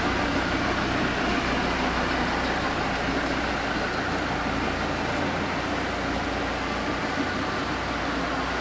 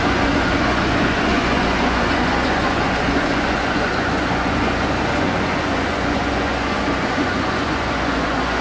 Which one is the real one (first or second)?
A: first